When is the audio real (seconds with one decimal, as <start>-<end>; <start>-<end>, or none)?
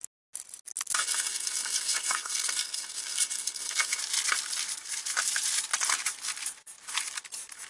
0.0-1.0; 4.0-7.7